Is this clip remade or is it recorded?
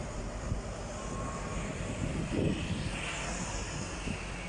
recorded